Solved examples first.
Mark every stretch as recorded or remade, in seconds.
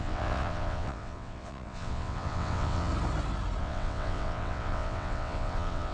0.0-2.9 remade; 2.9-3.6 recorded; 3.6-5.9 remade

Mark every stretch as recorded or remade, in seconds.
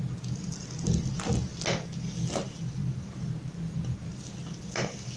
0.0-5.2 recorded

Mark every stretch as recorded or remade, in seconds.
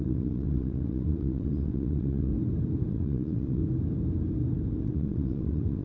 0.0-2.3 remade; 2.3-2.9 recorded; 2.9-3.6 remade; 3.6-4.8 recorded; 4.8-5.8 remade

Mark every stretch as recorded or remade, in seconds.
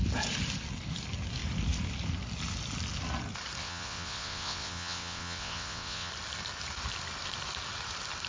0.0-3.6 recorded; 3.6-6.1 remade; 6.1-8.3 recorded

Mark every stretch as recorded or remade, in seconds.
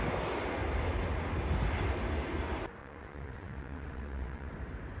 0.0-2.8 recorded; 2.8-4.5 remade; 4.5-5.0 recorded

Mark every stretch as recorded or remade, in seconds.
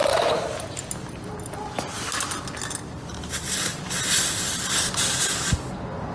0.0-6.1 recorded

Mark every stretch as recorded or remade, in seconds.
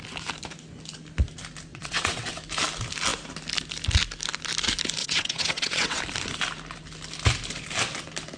0.0-1.7 recorded; 1.7-2.4 remade; 2.4-5.0 recorded; 5.0-6.0 remade; 6.0-8.4 recorded